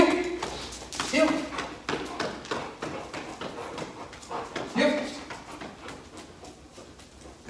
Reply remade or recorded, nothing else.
recorded